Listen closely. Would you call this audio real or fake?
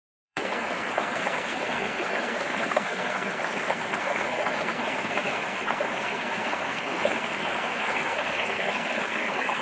fake